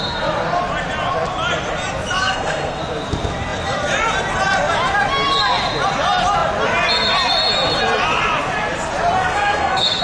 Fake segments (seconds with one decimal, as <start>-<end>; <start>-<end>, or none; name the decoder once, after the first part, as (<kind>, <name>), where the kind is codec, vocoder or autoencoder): 2.2-2.8 (codec, SNAC); 9.2-10.0